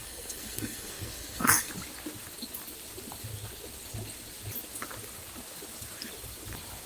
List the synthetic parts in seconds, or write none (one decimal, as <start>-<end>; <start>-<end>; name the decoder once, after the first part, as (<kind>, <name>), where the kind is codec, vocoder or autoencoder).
0.0-1.7 (codec, SNAC)